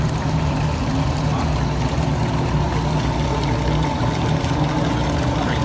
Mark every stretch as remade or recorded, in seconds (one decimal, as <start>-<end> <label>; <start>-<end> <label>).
0.0-5.6 recorded